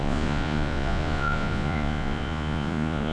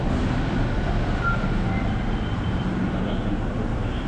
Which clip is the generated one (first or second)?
first